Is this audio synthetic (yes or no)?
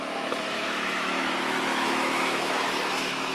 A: yes